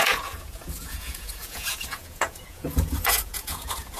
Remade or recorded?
remade